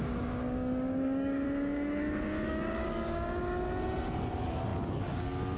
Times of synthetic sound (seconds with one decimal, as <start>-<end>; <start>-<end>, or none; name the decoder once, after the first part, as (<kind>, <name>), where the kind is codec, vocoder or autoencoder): 0.0-3.4 (codec, DAC)